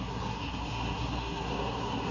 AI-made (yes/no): yes